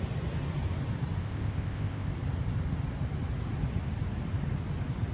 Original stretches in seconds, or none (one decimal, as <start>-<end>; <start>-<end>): 0.0-1.2; 2.1-5.1